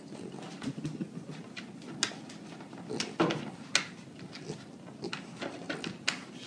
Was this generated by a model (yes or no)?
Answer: no